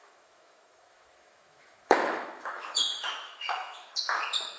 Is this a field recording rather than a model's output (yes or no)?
no